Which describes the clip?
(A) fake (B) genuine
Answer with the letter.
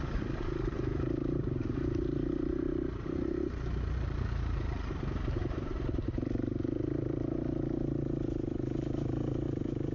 A